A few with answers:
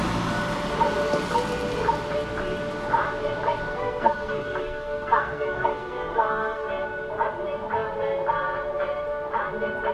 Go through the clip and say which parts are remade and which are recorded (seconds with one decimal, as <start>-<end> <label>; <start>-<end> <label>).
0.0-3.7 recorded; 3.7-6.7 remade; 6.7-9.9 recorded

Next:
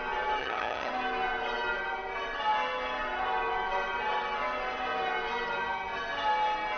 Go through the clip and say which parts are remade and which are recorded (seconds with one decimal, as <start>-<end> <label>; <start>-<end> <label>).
0.0-0.4 recorded; 0.4-0.9 remade; 0.9-6.8 recorded

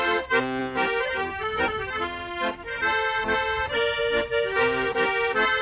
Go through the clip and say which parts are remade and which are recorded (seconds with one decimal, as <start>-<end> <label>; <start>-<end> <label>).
0.0-5.6 recorded

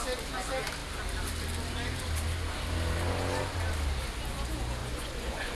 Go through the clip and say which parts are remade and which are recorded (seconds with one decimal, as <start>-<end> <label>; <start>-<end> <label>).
0.0-4.8 recorded; 4.8-5.5 remade